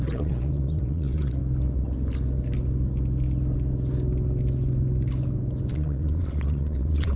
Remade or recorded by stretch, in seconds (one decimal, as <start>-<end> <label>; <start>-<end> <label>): 0.0-1.4 remade; 1.4-5.7 recorded; 5.7-7.2 remade